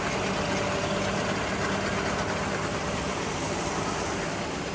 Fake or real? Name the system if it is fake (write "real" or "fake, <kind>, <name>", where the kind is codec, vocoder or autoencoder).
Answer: real